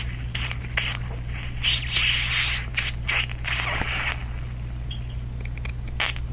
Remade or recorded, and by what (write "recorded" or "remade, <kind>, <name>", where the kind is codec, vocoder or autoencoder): recorded